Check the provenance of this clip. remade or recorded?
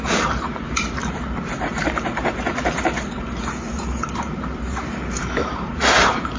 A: remade